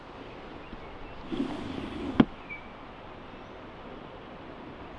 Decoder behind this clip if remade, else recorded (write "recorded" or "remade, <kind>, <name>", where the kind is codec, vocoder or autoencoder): recorded